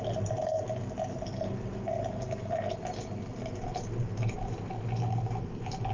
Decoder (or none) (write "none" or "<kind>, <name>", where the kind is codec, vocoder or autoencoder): none